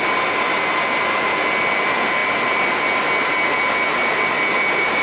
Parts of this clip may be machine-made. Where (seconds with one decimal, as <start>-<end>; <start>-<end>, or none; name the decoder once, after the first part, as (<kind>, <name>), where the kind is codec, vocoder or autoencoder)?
none